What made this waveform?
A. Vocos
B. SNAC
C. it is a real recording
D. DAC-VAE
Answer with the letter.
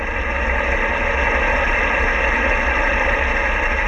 C